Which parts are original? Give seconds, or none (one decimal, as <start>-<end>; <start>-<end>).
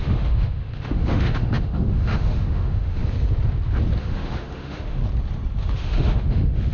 3.0-4.0; 5.0-5.6